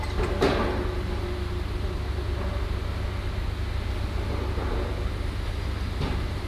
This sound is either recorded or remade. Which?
recorded